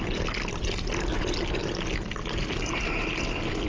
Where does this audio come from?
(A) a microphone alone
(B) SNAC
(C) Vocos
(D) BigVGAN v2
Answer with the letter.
A